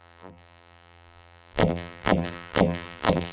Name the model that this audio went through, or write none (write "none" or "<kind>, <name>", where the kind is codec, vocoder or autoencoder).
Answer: vocoder, BigVGAN v2